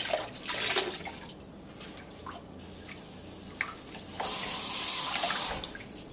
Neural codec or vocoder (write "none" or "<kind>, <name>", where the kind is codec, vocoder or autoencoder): none